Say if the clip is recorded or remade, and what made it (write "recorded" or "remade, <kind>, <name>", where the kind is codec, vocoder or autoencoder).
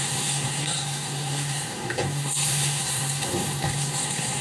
remade, codec, SNAC